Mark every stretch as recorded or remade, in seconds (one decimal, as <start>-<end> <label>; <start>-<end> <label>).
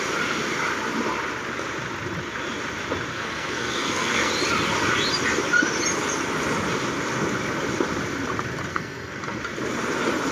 0.0-3.1 recorded; 3.1-4.3 remade; 4.3-8.7 recorded; 8.7-9.4 remade; 9.4-10.3 recorded